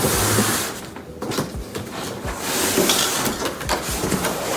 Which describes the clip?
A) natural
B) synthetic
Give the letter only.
A